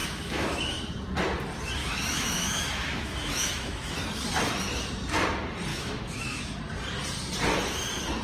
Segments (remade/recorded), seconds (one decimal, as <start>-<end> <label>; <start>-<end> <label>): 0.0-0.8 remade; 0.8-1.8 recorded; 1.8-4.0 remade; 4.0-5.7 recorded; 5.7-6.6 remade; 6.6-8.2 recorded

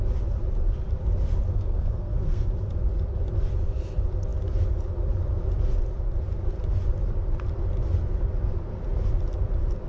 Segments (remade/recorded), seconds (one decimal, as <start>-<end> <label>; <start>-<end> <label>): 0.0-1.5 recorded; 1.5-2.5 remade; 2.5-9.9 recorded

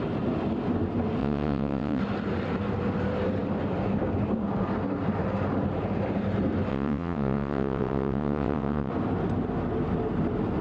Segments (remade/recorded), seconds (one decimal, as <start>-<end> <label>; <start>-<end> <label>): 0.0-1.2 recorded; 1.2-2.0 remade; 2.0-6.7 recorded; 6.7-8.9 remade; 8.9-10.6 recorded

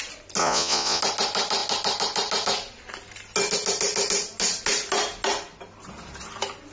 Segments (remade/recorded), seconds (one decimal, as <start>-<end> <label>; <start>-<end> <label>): 0.0-0.4 recorded; 0.4-1.0 remade; 1.0-6.7 recorded

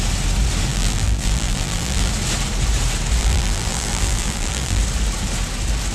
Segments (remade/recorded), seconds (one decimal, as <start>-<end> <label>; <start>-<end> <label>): 0.0-0.7 recorded; 0.7-2.1 remade; 2.1-3.2 recorded; 3.2-4.8 remade; 4.8-5.9 recorded